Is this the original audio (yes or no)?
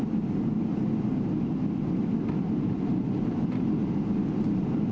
yes